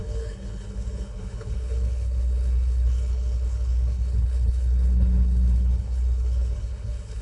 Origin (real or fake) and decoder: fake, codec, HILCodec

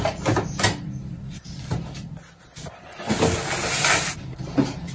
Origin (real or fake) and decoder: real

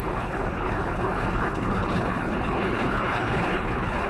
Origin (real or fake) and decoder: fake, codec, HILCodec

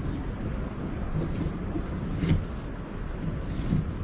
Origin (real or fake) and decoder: real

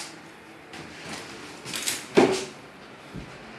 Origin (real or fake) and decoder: real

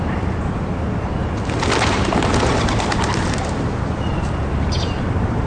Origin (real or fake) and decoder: real